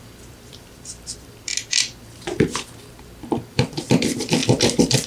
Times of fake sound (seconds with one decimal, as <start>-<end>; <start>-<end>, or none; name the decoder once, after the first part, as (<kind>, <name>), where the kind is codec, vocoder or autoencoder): 0.0-1.5 (vocoder, BigVGAN v2); 3.0-4.4